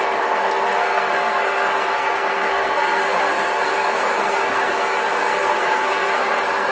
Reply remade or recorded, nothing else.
remade